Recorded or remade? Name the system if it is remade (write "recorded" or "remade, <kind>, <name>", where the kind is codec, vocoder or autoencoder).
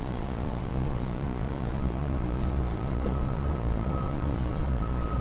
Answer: remade, vocoder, Vocos